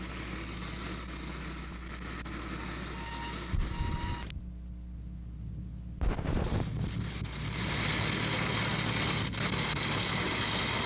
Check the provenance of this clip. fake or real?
real